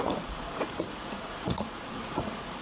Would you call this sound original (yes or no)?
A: no